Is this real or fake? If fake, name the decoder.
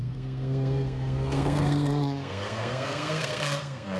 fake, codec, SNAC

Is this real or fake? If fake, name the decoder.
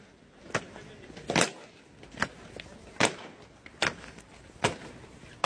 real